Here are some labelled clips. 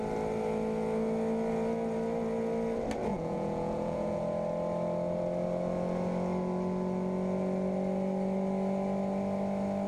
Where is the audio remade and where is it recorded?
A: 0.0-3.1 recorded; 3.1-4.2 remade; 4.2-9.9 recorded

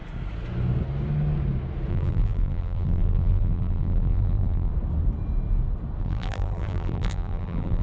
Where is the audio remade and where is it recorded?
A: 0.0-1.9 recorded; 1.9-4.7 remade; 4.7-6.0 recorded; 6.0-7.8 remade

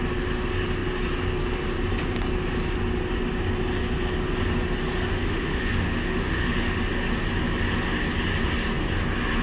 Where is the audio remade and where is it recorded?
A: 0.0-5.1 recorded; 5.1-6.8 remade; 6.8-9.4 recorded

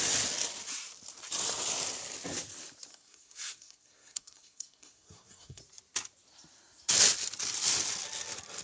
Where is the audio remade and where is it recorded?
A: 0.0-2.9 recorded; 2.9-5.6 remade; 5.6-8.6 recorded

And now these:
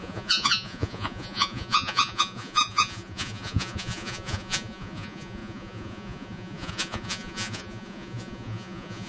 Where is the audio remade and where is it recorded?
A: 0.0-9.1 remade

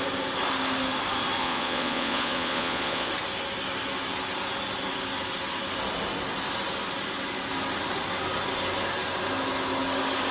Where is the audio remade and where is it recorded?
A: 0.0-1.4 recorded; 1.4-3.1 remade; 3.1-10.3 recorded